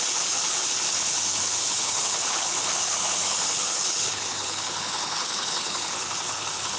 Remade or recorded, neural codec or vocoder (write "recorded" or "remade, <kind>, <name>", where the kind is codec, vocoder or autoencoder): remade, codec, HILCodec